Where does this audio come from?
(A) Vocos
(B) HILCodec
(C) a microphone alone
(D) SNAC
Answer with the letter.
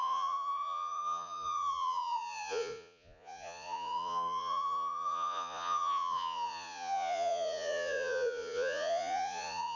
A